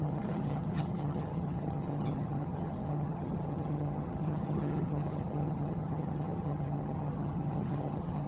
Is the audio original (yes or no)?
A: no